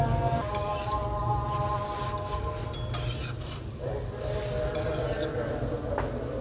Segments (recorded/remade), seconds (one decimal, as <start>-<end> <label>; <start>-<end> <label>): 0.0-6.4 recorded